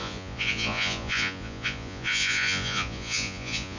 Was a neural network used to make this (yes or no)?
yes